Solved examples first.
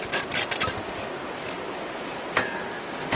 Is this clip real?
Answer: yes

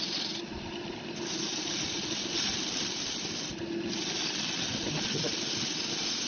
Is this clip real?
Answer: yes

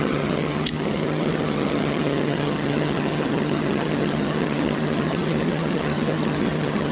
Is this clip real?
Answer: no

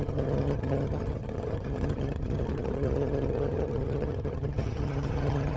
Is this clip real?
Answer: no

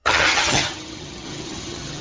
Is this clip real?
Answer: no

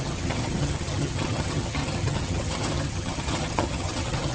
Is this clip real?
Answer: no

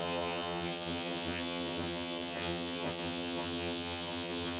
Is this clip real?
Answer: no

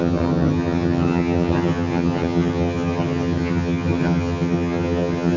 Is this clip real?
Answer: no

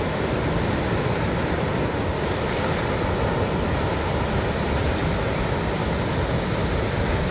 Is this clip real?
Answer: yes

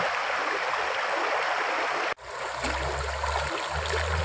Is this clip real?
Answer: yes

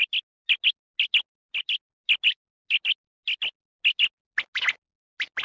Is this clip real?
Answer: yes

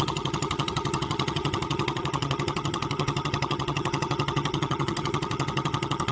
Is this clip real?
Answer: no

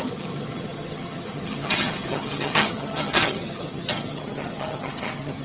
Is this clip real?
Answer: no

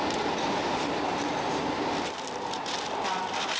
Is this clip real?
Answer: yes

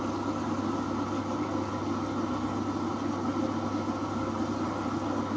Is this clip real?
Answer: yes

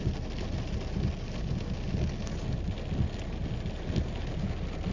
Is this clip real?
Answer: yes